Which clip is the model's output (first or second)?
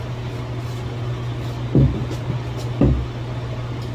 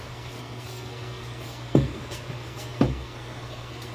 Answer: second